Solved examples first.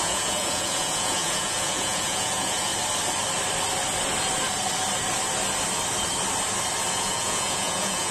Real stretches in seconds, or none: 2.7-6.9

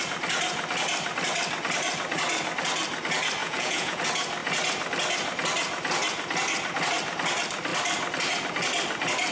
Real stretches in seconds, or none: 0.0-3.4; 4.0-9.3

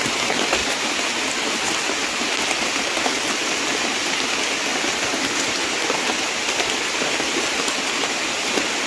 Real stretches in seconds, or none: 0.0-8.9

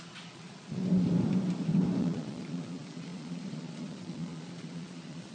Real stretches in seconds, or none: 0.8-2.0